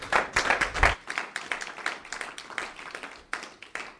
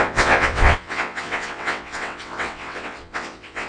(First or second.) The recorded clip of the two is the first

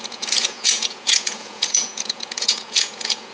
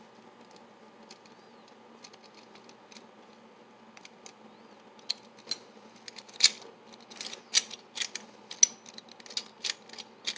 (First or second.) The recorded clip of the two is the second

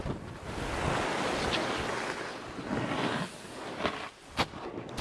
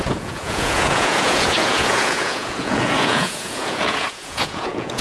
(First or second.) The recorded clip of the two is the first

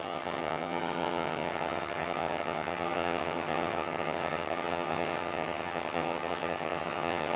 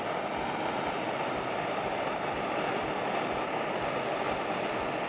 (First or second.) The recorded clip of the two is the second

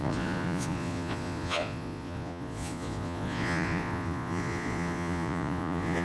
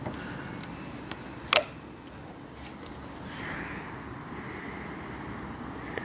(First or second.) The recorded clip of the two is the second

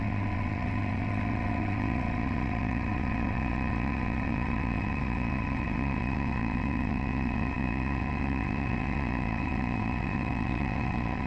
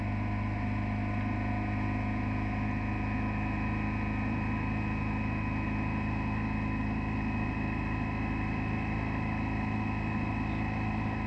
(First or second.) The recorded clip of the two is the second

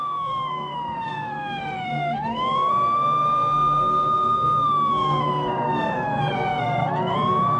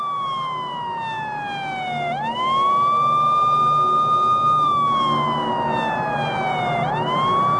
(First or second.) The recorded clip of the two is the second